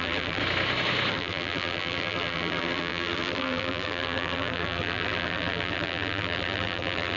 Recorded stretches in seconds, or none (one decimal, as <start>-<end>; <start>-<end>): 0.4-1.1